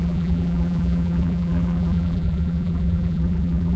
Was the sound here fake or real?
fake